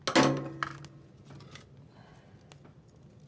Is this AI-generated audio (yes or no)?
no